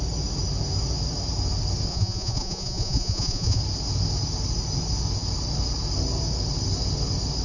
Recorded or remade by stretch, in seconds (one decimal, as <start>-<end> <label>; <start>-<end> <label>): 0.0-1.9 recorded; 1.9-3.6 remade; 3.6-7.4 recorded